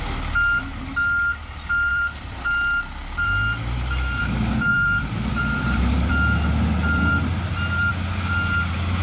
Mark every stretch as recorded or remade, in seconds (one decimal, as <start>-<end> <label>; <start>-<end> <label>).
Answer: 0.0-1.9 recorded; 1.9-4.2 remade; 4.2-4.7 recorded; 4.7-7.9 remade; 7.9-9.0 recorded